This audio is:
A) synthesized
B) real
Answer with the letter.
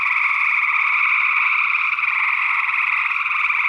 A